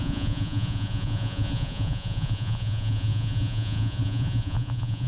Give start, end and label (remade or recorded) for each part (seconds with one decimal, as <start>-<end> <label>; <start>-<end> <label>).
0.0-5.1 remade